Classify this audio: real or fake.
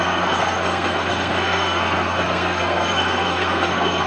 fake